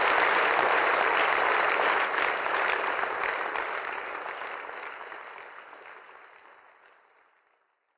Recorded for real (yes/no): yes